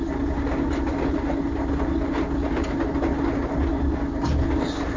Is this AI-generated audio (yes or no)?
no